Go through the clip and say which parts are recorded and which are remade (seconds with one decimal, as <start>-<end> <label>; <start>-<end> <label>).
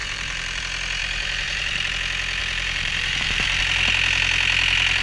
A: 0.0-0.6 remade; 0.6-1.0 recorded; 1.0-1.9 remade; 1.9-2.4 recorded; 2.4-3.6 remade; 3.6-5.0 recorded